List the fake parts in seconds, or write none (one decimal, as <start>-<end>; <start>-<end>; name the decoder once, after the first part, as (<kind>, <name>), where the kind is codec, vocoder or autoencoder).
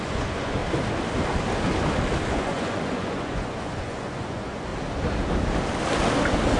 0.0-0.6 (vocoder, Vocos); 2.3-4.7